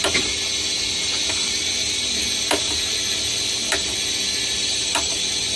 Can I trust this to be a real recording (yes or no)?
yes